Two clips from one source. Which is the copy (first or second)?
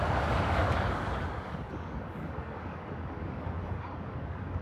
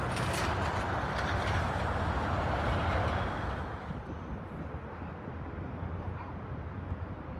first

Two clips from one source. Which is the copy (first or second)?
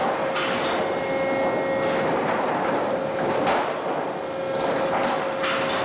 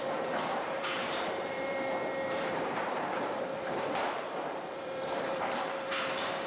second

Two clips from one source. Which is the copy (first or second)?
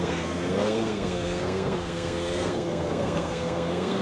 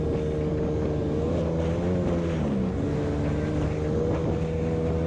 first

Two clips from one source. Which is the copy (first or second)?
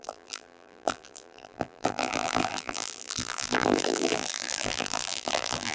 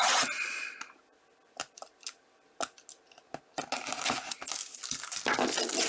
first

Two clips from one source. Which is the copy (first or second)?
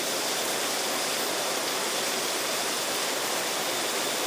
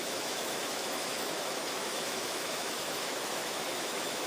second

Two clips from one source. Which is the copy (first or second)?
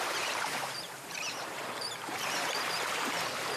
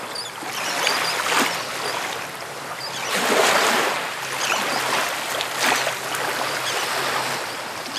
first